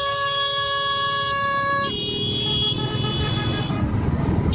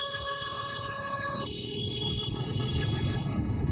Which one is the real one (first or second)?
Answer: first